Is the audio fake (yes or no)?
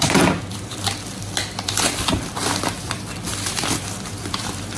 yes